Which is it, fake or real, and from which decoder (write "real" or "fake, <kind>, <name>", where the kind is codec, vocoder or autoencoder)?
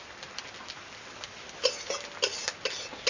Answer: real